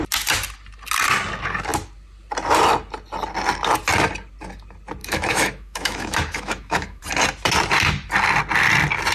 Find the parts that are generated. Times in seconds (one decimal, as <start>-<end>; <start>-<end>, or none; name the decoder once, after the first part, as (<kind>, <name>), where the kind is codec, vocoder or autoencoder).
5.0-7.0 (autoencoder, DAC-VAE)